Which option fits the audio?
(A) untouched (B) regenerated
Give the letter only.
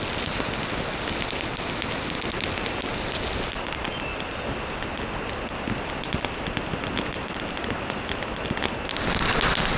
A